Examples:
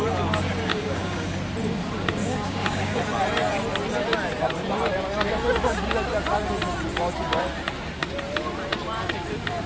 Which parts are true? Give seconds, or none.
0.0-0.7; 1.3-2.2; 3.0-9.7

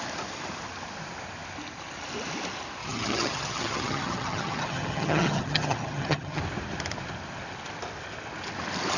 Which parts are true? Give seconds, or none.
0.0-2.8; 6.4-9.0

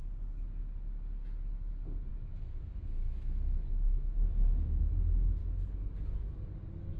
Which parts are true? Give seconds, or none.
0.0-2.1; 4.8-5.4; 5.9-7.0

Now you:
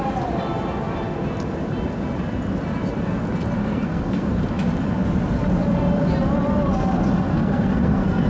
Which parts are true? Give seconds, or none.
0.0-3.6; 4.3-7.3